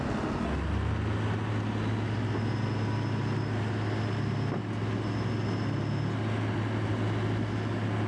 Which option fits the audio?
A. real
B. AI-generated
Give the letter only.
A